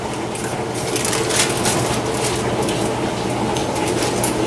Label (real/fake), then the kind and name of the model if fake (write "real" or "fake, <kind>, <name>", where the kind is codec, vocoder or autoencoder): real